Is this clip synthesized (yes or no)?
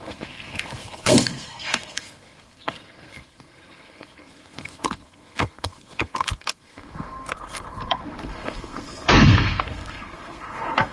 yes